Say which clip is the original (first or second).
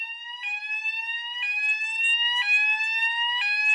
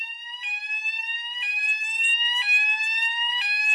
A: first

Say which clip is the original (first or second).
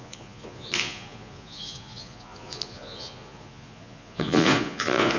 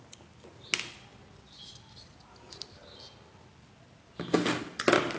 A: second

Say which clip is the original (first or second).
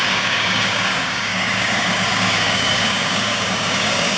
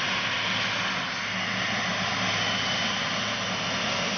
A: second